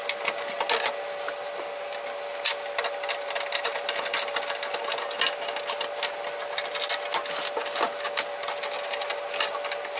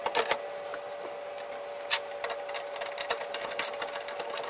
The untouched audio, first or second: first